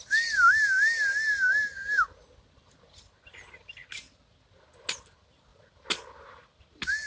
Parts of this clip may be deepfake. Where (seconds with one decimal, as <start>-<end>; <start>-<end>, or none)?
none